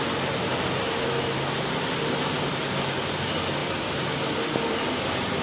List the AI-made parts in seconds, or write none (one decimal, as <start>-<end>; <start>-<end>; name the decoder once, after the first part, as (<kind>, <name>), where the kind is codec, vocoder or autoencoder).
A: none